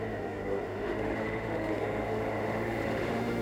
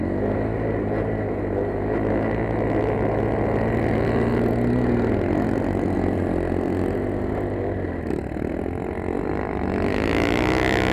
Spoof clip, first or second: first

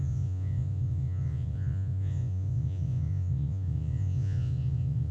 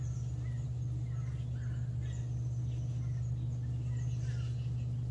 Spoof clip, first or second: first